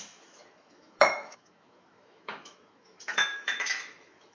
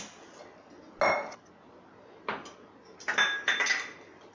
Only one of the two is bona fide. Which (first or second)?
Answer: second